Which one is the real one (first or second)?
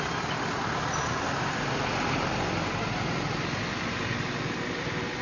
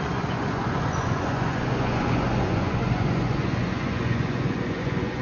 first